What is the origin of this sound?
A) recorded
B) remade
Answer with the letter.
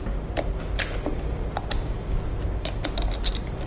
A